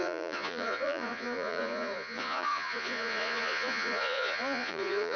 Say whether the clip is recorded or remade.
remade